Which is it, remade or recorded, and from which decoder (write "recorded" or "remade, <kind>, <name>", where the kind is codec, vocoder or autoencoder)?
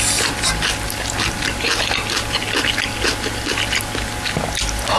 recorded